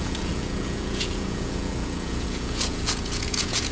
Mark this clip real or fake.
fake